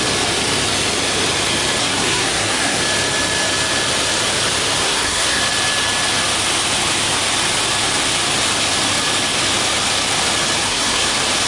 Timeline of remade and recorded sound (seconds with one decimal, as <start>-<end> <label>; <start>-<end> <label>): 0.0-1.8 recorded; 1.8-2.8 remade; 2.8-4.8 recorded; 4.8-5.4 remade; 5.4-10.6 recorded; 10.6-11.1 remade; 11.1-11.5 recorded